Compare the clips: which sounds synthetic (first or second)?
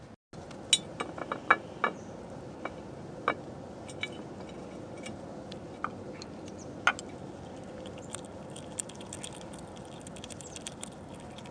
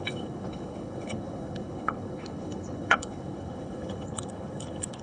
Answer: second